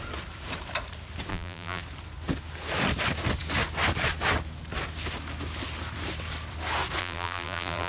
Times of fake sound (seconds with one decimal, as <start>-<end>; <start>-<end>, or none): 1.3-1.8; 7.0-7.9